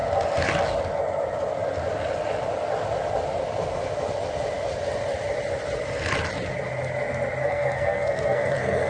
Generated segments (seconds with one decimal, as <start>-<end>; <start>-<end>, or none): 7.4-8.9